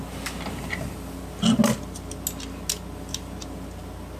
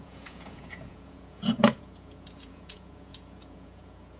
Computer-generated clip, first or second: second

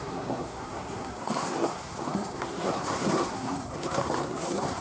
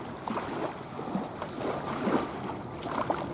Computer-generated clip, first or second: first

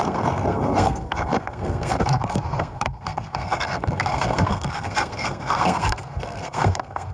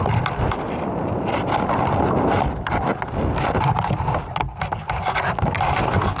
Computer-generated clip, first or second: first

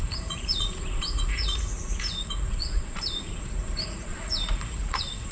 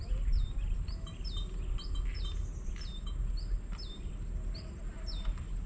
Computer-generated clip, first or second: first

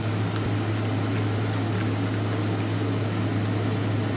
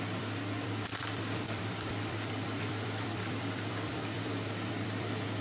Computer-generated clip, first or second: second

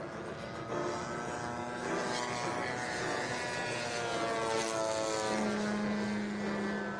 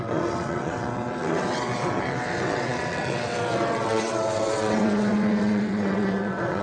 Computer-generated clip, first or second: second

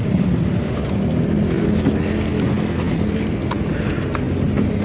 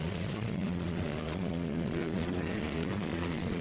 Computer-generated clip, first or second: second